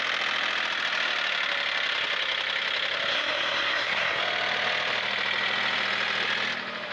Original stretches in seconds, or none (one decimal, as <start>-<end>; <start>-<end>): 0.0-3.1; 4.2-6.9